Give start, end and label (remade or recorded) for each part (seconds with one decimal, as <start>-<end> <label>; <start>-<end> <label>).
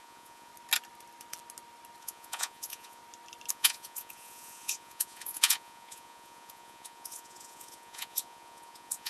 0.0-0.5 remade; 0.5-2.0 recorded; 2.0-3.0 remade; 3.0-3.5 recorded; 3.5-9.1 remade